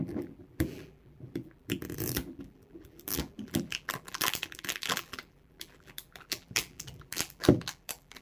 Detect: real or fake fake